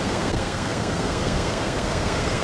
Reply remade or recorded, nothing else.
remade